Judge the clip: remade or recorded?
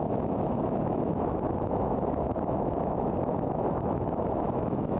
remade